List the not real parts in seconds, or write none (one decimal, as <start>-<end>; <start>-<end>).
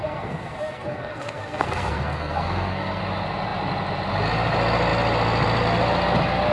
0.0-3.0